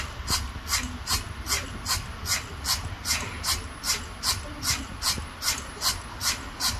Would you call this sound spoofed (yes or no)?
no